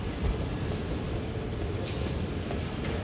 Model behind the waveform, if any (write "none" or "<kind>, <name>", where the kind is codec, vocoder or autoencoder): none